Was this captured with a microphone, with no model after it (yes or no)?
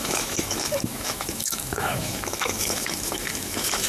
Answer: no